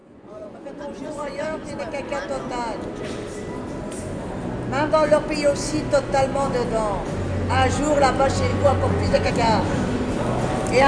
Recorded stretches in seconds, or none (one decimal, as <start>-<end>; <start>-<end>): 1.8-8.5; 9.3-10.9